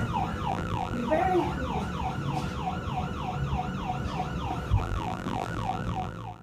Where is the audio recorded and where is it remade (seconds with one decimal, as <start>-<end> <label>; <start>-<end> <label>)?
0.0-0.5 recorded; 0.5-1.0 remade; 1.0-4.8 recorded; 4.8-6.4 remade